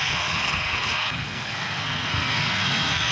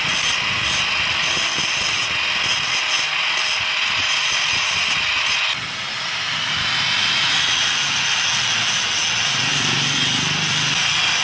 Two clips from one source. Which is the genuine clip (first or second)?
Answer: second